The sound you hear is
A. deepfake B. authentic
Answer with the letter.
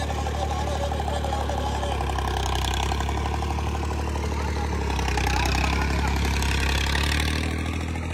B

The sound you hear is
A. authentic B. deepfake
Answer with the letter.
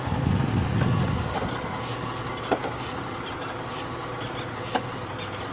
A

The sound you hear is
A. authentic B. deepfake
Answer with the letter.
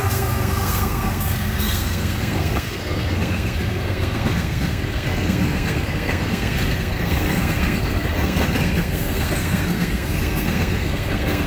B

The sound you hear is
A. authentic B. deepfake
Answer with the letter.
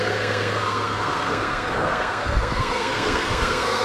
B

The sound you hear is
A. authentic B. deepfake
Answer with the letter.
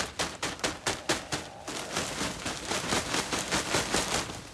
A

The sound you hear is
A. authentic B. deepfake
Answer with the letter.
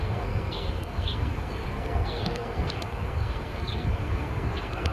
B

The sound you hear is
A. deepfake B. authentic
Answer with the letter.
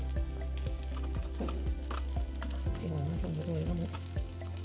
B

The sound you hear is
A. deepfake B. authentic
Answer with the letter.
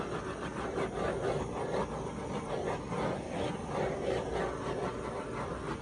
B